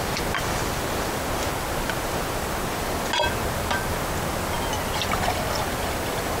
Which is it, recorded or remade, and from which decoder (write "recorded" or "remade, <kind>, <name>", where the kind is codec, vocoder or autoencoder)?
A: recorded